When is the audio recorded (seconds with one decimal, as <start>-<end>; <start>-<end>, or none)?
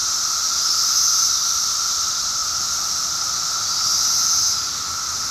0.0-5.3